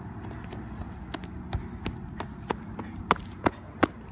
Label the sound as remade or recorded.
recorded